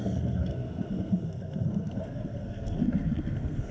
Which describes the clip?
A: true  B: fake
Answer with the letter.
B